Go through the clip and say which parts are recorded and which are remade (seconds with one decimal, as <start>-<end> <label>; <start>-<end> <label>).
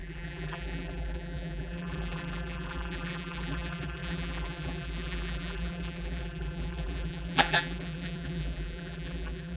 0.0-9.6 remade